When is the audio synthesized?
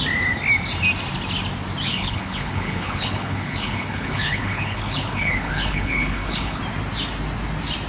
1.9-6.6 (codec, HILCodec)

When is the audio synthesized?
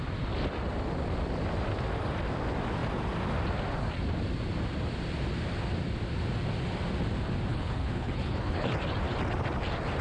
7.5-8.7 (codec, HILCodec)